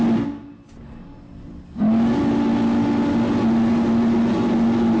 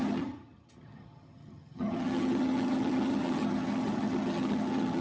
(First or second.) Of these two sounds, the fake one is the second